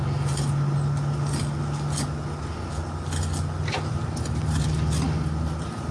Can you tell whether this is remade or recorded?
recorded